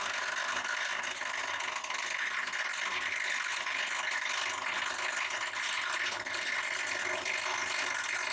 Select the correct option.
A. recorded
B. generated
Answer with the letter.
A